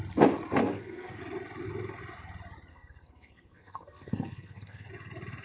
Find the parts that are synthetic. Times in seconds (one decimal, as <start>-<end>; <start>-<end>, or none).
0.6-1.2; 2.7-4.9